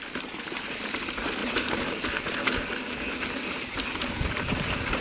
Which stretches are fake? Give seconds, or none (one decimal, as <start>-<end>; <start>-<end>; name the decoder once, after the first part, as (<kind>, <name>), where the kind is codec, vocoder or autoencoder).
none

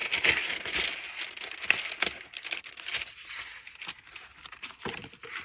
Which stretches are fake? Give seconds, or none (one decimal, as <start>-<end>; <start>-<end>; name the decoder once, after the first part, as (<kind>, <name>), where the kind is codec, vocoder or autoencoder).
none

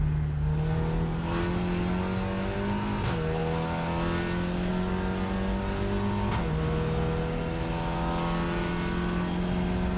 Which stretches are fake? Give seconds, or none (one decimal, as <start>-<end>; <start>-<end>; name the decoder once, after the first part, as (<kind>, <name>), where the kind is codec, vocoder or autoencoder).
none

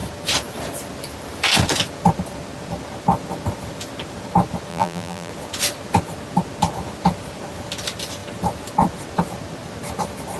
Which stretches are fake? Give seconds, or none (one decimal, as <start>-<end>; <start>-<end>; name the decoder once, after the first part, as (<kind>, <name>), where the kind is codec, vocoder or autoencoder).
4.7-5.3 (vocoder, BigVGAN v2)

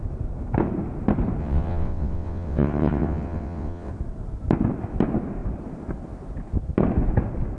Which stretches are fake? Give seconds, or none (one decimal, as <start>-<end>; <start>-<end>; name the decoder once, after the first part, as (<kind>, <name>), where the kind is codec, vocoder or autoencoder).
1.4-3.9 (vocoder, WaveNeXt)